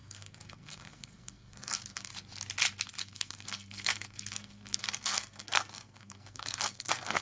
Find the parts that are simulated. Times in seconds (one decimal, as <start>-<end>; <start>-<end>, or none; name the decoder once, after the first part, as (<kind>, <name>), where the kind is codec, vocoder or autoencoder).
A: 0.0-2.1 (codec, SNAC); 3.0-7.2